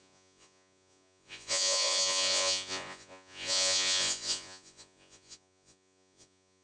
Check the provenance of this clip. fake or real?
fake